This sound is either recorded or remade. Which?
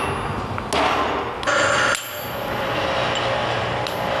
recorded